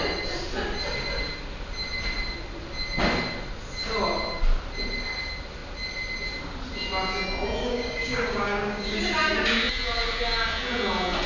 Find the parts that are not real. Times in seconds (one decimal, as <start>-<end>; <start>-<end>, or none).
7.6-9.0